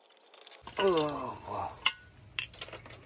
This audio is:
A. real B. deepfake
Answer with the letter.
A